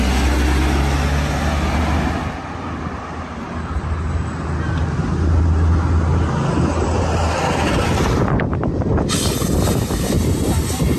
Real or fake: real